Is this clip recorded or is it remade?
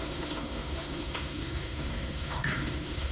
remade